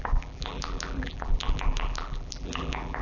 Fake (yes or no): yes